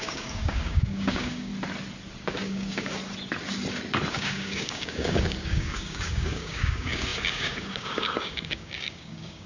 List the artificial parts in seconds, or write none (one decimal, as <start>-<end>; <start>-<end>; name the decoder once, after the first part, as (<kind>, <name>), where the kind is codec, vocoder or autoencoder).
0.0-1.5 (codec, DAC); 2.3-3.0; 4.1-9.5